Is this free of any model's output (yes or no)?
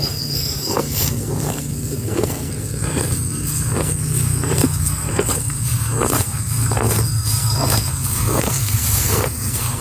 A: no